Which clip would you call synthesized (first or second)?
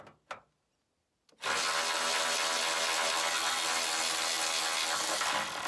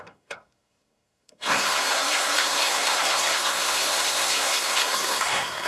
second